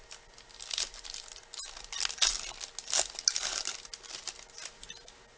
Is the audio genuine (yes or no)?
yes